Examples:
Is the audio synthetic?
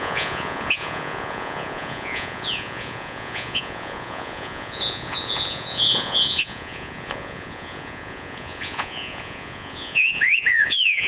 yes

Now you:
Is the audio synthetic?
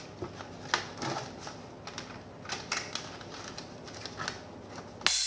no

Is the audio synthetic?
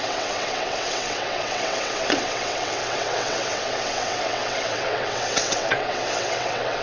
yes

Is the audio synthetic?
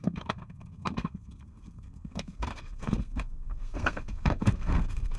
yes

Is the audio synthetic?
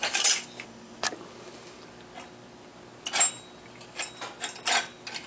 no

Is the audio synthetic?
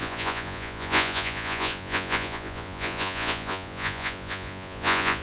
yes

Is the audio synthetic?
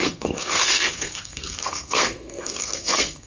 yes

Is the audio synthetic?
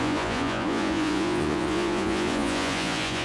yes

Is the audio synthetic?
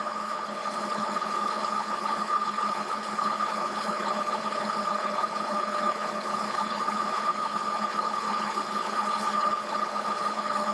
yes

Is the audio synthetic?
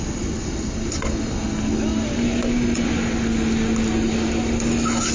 no